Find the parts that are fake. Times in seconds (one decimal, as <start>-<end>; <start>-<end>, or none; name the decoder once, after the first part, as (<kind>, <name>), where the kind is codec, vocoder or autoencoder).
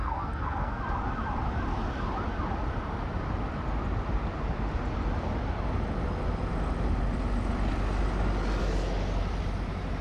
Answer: 0.0-0.8 (codec, SNAC)